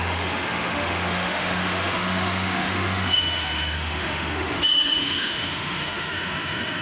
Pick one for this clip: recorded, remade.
remade